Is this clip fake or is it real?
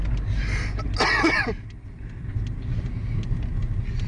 real